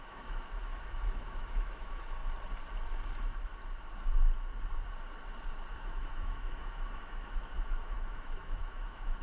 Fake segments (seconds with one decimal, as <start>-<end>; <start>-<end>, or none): 0.0-2.2; 5.7-9.2